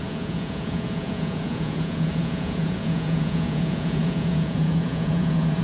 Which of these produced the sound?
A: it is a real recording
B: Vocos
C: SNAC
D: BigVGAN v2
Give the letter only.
B